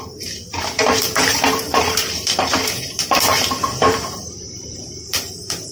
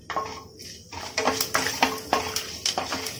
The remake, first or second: first